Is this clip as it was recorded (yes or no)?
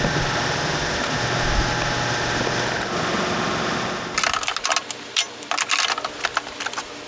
yes